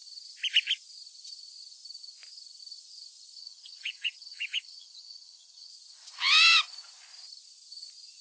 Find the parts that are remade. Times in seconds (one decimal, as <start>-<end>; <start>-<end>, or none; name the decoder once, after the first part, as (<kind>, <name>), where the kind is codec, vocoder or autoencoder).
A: 3.4-5.7 (vocoder, HiFi-GAN)